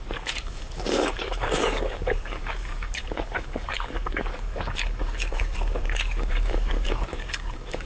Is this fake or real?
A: fake